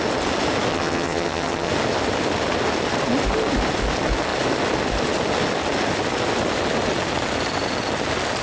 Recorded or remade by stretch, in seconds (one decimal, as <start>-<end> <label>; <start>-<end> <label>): 0.0-0.7 recorded; 0.7-1.7 remade; 1.7-8.4 recorded